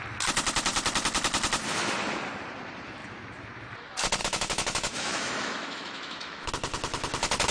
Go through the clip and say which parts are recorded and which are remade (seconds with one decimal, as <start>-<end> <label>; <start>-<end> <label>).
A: 0.0-4.2 recorded; 4.2-6.5 remade; 6.5-7.5 recorded